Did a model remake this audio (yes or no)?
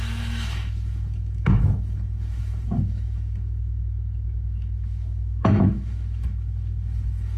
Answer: yes